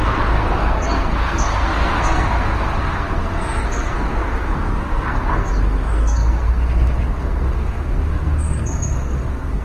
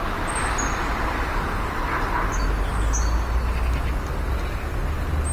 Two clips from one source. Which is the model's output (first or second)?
first